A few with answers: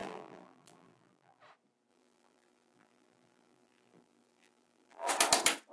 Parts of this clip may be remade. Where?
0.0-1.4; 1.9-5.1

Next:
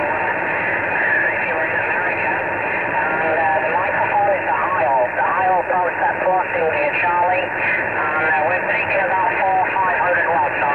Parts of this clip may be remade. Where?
4.6-6.9

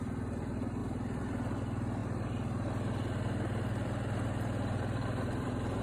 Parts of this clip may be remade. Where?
0.8-1.5; 2.0-5.8